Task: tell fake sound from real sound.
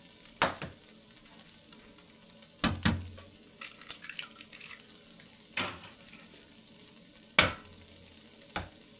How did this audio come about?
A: real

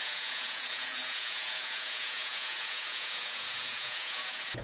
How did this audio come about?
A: fake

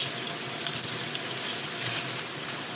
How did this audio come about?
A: real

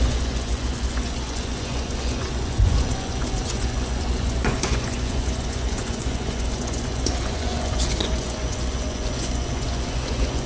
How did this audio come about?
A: fake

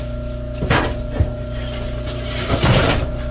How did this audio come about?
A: real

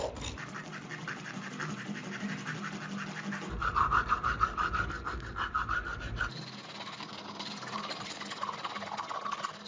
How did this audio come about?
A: real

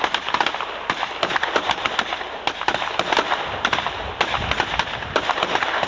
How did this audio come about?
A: real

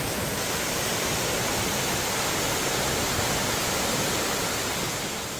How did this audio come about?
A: real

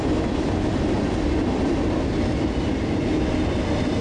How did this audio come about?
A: real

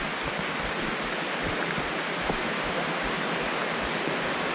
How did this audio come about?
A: real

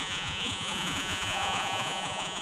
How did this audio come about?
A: fake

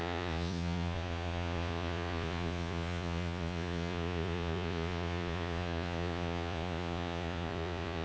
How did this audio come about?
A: fake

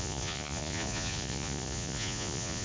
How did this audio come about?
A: fake